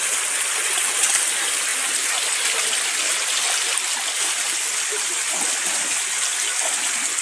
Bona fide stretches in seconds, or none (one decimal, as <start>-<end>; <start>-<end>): 0.0-7.2